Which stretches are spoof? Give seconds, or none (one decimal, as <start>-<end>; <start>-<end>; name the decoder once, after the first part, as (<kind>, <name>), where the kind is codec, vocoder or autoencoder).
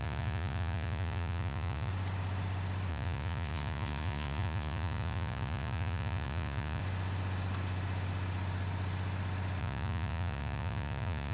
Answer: 0.0-1.9 (vocoder, Vocos); 2.9-6.8; 9.6-11.3